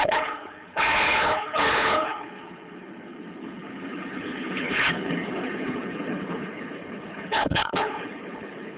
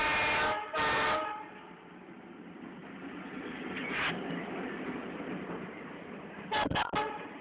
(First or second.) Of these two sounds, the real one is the second